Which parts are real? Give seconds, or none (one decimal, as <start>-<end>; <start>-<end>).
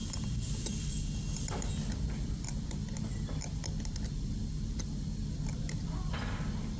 2.8-5.5